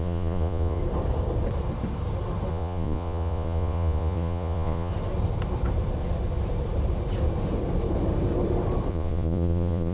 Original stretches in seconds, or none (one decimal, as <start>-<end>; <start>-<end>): 0.8-2.5; 4.9-8.9